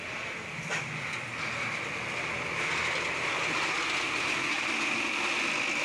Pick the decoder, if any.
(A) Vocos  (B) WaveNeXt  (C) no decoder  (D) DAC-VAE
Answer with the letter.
C